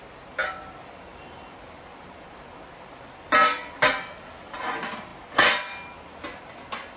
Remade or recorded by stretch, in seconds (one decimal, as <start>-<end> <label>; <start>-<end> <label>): 0.0-7.0 recorded